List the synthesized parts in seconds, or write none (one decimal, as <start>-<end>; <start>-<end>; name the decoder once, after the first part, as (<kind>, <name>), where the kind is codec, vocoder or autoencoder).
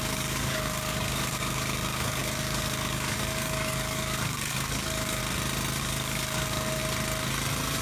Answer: 0.0-5.2 (codec, DAC); 5.8-6.8